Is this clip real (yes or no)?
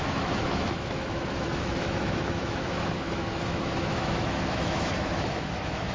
no